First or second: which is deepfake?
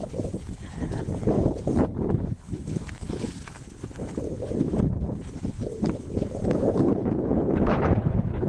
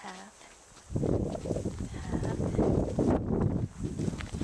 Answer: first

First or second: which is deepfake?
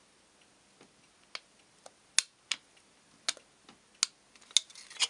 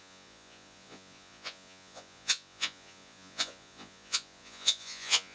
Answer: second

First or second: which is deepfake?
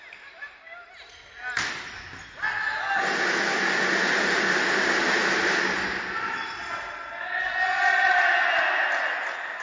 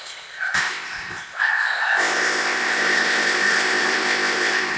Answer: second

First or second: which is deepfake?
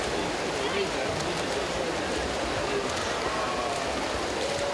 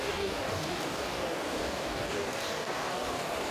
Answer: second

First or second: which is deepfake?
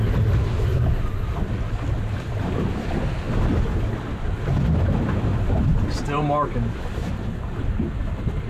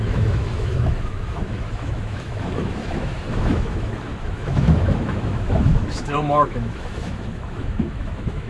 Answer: second